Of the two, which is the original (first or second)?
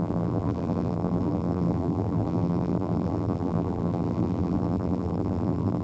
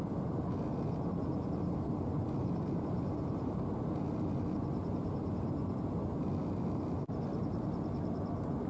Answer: second